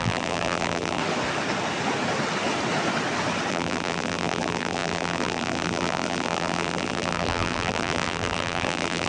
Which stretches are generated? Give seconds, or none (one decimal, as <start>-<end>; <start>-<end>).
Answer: 0.0-1.0; 3.5-9.1

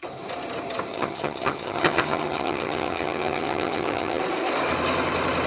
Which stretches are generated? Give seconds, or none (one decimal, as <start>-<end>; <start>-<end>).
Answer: 0.9-4.2

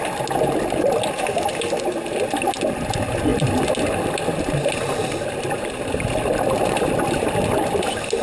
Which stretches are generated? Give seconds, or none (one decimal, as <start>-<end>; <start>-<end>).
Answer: none

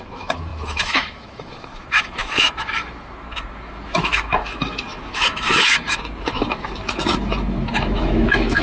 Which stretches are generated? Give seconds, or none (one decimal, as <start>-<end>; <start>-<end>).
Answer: 0.0-8.6